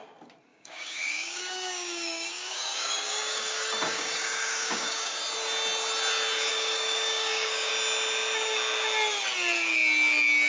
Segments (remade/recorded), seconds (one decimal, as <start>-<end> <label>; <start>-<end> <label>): 0.0-0.5 recorded; 0.5-5.2 remade; 5.2-6.5 recorded; 6.5-7.7 remade; 7.7-10.5 recorded